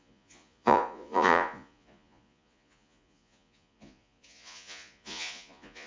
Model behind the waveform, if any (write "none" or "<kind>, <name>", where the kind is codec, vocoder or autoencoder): vocoder, Vocos